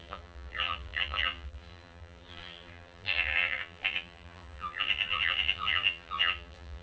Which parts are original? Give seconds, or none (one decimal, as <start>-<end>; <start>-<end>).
none